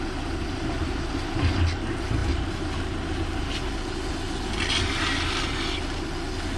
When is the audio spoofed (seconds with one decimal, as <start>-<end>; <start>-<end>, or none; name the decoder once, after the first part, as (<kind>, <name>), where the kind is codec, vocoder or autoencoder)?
none